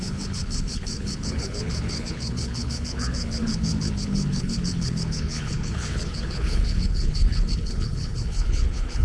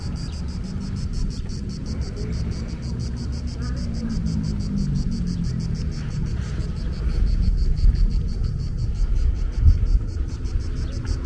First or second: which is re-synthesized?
first